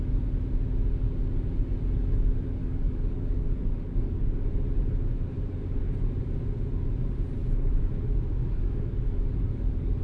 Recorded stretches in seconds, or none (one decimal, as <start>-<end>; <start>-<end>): 0.0-2.6; 4.2-7.4